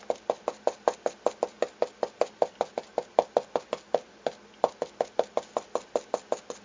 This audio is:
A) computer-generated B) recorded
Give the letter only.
B